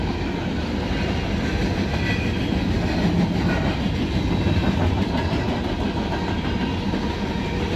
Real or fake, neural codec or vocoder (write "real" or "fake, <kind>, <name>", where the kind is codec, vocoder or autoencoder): real